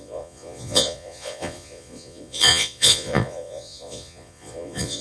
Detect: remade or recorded remade